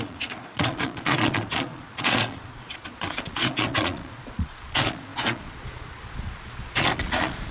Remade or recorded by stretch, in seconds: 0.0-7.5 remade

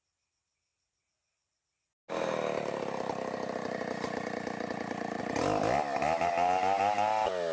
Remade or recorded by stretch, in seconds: 0.0-7.5 recorded

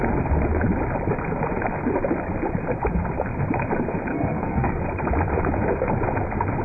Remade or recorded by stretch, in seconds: 0.0-4.1 recorded; 4.1-4.8 remade; 4.8-6.6 recorded